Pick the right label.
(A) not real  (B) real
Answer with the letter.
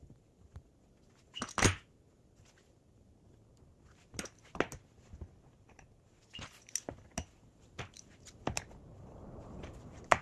B